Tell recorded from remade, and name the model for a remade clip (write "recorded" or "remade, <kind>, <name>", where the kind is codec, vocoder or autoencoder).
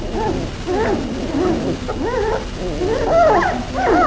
recorded